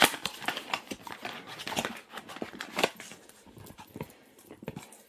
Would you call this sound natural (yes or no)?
no